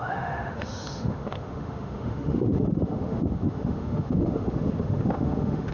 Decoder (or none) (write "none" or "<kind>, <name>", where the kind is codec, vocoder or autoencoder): autoencoder, DAC-VAE